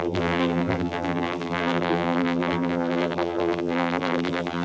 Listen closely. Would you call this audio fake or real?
fake